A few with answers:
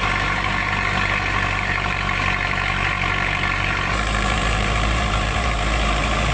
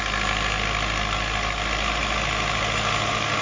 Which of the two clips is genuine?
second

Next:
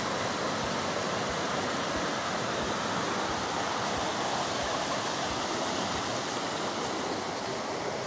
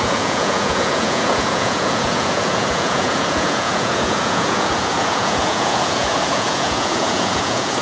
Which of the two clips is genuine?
first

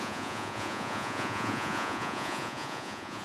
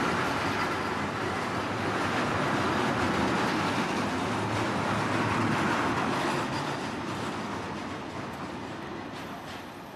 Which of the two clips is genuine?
second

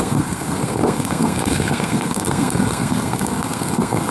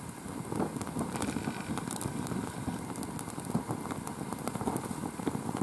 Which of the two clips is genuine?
second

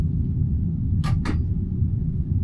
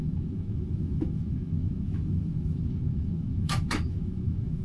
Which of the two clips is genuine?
first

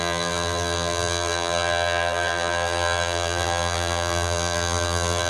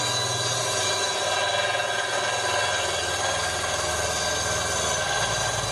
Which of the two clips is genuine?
second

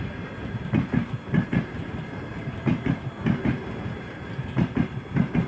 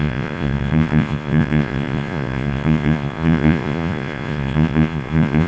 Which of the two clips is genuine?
first